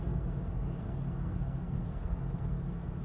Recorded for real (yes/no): no